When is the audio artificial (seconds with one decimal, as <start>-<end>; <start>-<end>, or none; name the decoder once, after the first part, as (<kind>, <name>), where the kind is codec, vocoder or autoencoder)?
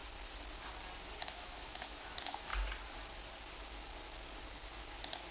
1.2-2.5 (autoencoder, DAC-VAE)